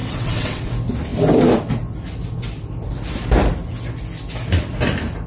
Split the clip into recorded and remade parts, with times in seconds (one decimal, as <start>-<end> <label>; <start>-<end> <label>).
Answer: 0.0-0.7 remade; 0.7-5.3 recorded